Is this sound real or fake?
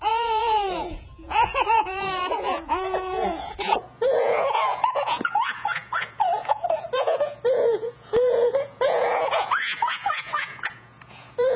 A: fake